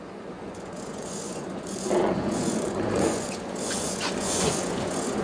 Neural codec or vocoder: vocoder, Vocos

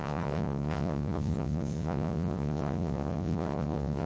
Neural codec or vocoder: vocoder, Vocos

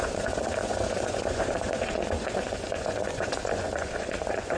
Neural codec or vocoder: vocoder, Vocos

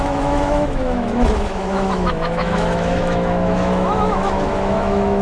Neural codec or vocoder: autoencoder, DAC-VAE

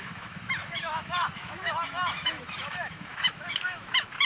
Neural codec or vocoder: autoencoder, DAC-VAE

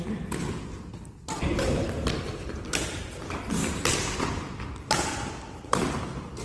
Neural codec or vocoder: none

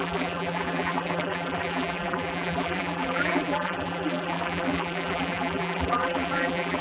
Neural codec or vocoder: vocoder, BigVGAN v2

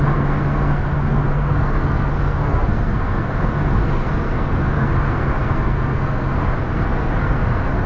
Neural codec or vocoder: codec, SNAC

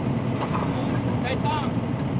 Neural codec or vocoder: none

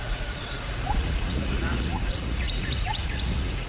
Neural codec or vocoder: vocoder, Vocos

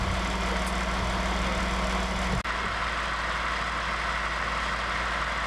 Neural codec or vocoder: none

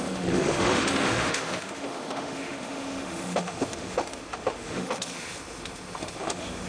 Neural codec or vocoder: autoencoder, DAC-VAE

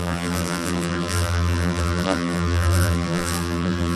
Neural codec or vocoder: vocoder, BigVGAN v2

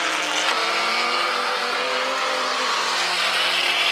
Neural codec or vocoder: none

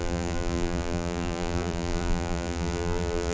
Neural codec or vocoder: vocoder, BigVGAN v2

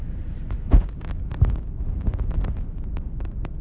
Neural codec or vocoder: none